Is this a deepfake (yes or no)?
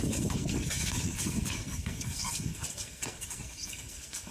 yes